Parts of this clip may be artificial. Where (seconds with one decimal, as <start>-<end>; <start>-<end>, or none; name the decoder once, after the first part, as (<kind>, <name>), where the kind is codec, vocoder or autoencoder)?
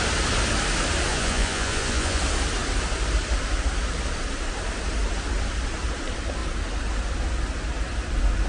1.1-2.2 (vocoder, Vocos)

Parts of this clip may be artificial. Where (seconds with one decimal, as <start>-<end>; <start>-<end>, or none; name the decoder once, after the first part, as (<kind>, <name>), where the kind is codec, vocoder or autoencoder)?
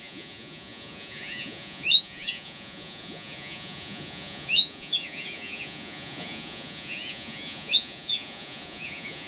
0.0-9.3 (vocoder, Vocos)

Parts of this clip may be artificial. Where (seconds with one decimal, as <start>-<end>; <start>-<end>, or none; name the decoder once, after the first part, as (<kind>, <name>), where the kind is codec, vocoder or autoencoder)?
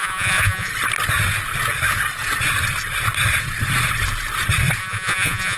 0.0-0.7 (vocoder, Vocos); 4.8-5.6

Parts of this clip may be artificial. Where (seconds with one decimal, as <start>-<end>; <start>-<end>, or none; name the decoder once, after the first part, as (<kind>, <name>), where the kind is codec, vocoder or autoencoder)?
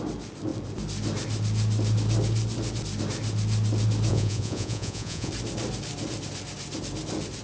4.1-5.3 (vocoder, Vocos)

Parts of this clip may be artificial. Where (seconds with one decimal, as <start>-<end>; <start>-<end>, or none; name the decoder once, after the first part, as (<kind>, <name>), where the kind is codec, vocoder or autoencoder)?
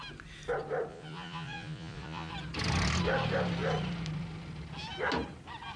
0.9-2.3 (vocoder, Vocos)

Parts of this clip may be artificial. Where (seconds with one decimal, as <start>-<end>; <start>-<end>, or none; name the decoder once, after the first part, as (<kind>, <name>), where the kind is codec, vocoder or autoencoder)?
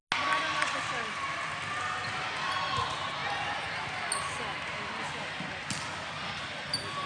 none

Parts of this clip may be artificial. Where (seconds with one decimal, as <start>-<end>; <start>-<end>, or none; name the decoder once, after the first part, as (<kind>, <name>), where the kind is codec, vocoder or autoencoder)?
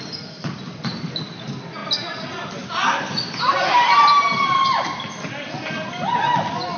none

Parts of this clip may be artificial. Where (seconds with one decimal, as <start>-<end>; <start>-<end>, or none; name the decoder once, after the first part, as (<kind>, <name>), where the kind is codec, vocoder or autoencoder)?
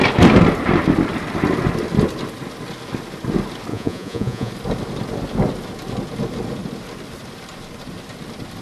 3.7-4.5 (vocoder, Vocos)